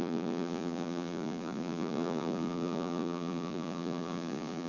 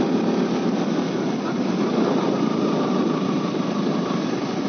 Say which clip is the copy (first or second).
first